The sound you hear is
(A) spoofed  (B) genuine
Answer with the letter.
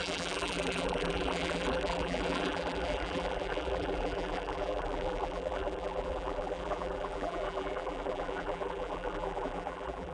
A